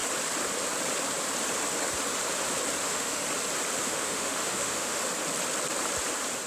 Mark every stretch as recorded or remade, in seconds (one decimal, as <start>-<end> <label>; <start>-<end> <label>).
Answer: 0.0-2.8 recorded; 2.8-3.2 remade; 3.2-3.8 recorded; 3.8-5.0 remade; 5.0-6.5 recorded